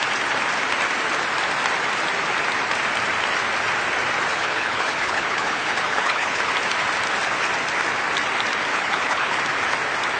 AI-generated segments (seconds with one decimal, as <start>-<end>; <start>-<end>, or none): 4.3-6.5; 8.7-9.4

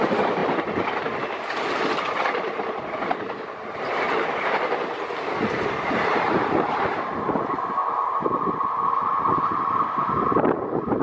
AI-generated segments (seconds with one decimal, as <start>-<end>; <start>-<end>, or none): none

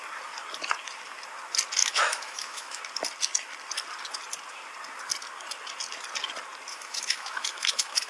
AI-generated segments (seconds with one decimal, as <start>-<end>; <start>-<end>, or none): 1.8-2.8; 6.7-8.1

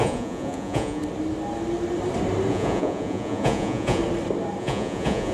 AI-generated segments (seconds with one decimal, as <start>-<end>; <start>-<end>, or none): 0.0-1.0; 2.5-4.0; 4.6-5.3

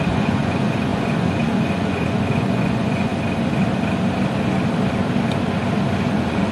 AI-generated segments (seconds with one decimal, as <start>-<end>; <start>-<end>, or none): 0.0-3.1; 6.1-6.5